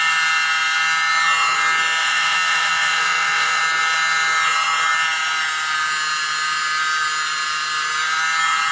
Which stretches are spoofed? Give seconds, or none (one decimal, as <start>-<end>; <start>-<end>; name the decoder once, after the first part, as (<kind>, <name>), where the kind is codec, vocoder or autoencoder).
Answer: 2.0-3.6 (vocoder, WaveNeXt)